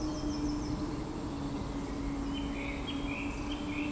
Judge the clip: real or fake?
real